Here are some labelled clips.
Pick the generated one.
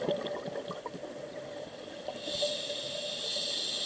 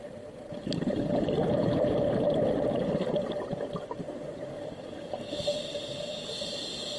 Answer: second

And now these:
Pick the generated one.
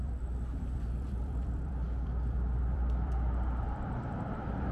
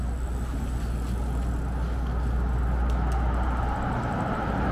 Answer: first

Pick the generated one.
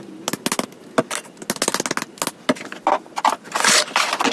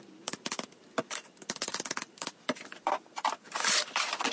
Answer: second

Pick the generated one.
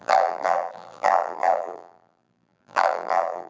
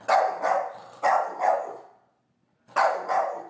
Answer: first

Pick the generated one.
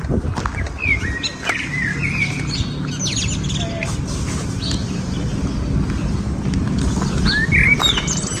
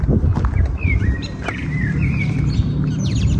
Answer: second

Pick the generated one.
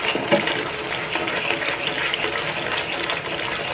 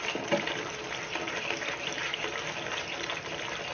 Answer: second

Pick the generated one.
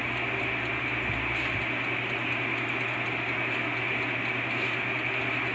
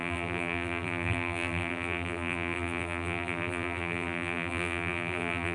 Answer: second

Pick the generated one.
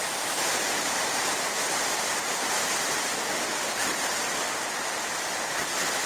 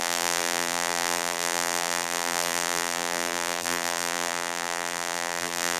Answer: second